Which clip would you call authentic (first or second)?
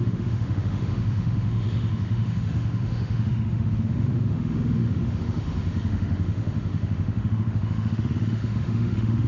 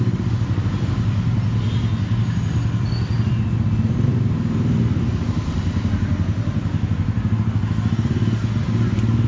second